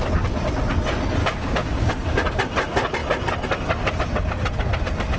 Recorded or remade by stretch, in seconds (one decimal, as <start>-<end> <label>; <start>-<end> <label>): 0.0-1.2 recorded; 1.2-1.9 remade; 1.9-5.2 recorded